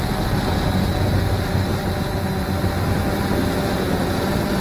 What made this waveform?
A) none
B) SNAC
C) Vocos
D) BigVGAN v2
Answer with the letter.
A